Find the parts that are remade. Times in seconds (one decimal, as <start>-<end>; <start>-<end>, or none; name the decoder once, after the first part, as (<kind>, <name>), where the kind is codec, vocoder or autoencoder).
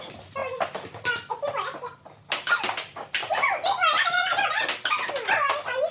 none